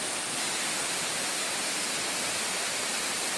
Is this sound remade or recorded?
recorded